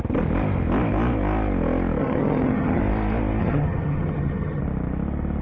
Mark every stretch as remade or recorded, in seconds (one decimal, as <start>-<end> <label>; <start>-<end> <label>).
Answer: 0.0-2.0 recorded; 2.0-2.8 remade; 2.8-3.4 recorded; 3.4-4.6 remade; 4.6-5.4 recorded